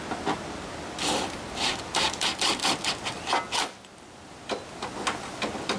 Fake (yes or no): no